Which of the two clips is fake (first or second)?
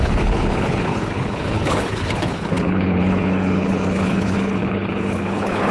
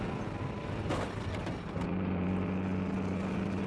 first